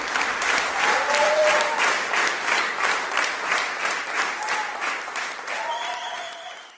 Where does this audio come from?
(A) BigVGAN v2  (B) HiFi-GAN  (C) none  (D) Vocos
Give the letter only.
A